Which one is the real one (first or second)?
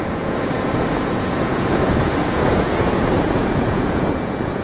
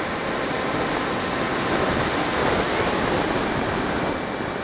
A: second